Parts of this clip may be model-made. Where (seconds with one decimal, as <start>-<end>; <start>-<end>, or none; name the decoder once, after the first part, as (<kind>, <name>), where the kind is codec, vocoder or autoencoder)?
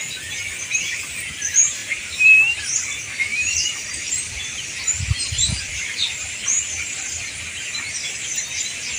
1.8-2.6 (vocoder, BigVGAN v2); 3.3-7.5